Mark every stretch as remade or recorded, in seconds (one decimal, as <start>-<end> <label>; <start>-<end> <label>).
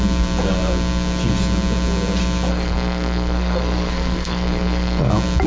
0.0-2.5 recorded; 2.5-5.1 remade; 5.1-5.5 recorded